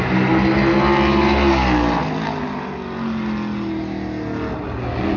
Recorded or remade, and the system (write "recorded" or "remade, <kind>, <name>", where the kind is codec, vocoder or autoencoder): recorded